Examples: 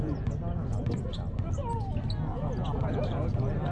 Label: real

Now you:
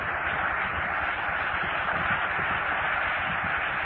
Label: real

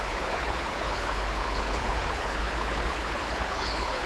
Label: fake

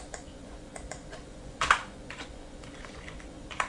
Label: fake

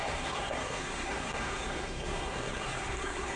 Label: fake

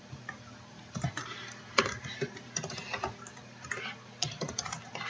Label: fake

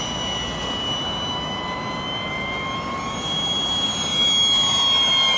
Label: real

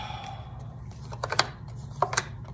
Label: real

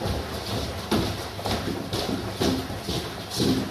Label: real